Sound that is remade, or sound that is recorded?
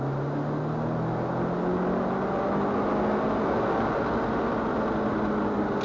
recorded